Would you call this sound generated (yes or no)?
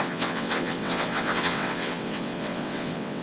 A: yes